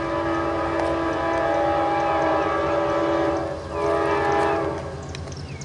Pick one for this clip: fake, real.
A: real